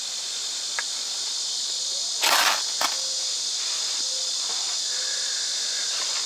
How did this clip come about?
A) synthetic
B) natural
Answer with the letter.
B